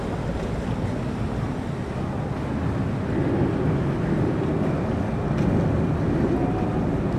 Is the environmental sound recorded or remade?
recorded